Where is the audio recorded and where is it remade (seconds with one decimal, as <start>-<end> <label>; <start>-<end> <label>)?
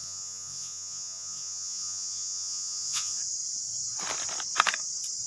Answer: 0.0-3.2 remade; 3.2-5.3 recorded